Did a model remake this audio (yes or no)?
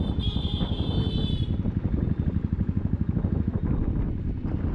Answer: no